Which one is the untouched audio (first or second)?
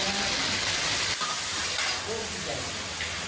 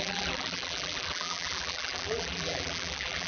first